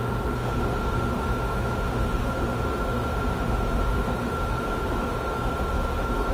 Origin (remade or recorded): remade